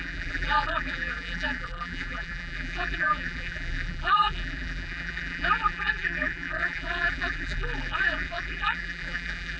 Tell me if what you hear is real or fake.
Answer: fake